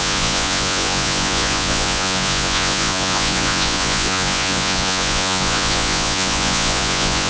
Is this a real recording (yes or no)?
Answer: no